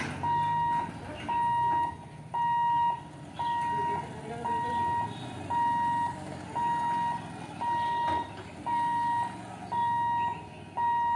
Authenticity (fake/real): real